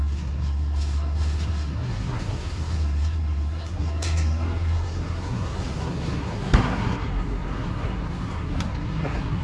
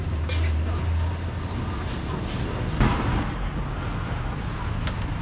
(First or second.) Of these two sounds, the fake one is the first